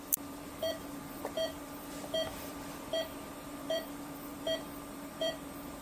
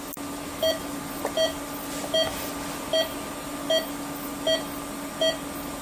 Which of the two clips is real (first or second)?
second